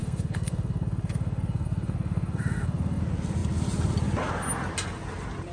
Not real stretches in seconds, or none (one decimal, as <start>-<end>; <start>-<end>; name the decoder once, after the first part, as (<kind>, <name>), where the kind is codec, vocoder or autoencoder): 0.0-3.0 (codec, SNAC)